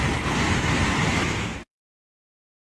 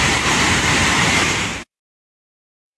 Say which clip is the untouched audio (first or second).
first